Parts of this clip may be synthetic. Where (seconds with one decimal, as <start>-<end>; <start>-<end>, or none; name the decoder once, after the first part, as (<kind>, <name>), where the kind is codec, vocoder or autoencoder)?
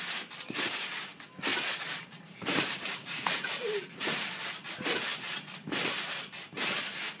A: 1.5-3.5 (vocoder, BigVGAN v2)